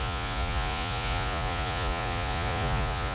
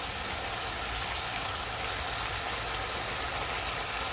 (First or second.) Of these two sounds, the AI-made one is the first